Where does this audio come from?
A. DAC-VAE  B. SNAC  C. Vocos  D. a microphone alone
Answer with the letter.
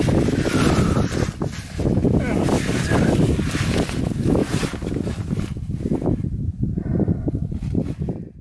D